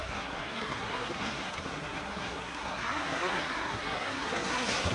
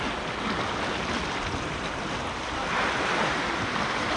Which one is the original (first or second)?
second